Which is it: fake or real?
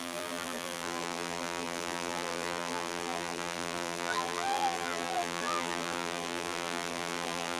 fake